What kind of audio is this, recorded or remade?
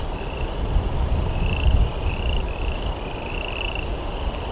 recorded